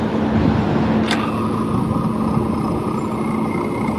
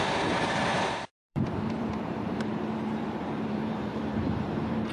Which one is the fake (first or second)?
second